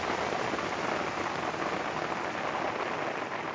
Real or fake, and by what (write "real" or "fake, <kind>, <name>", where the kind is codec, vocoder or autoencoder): real